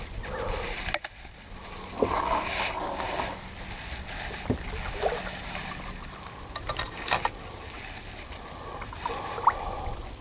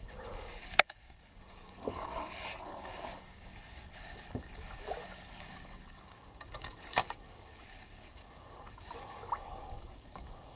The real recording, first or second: first